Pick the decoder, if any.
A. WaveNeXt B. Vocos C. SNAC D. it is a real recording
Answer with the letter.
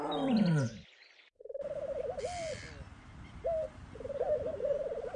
D